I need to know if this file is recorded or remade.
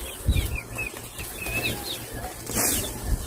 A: recorded